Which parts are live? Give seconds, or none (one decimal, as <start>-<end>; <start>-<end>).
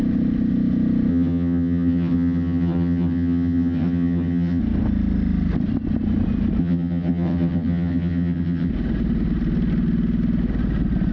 0.0-1.1; 4.6-6.6; 8.7-11.1